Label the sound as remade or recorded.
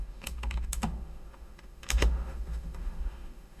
remade